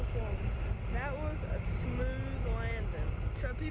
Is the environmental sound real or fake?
real